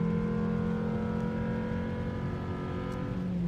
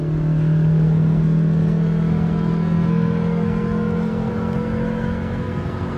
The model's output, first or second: second